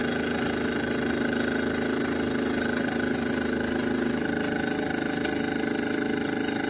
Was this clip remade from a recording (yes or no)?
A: no